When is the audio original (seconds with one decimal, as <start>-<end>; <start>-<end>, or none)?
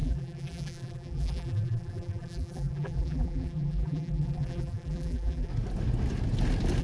5.5-6.8